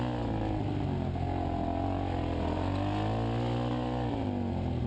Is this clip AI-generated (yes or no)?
no